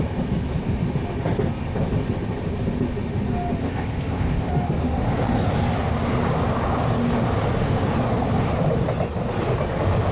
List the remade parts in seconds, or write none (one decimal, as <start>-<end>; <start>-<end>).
3.6-4.5